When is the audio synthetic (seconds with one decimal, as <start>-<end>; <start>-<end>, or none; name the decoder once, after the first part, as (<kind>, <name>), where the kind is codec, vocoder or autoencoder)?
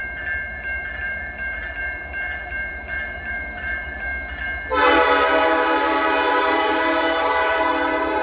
0.0-4.1 (vocoder, BigVGAN v2); 6.3-8.2